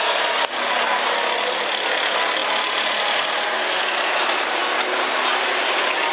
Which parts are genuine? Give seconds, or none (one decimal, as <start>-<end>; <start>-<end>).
0.0-6.1